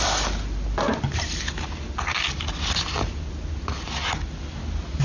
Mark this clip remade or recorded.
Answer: recorded